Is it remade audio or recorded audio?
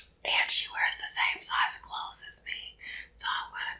recorded